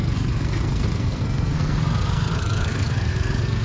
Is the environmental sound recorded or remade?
remade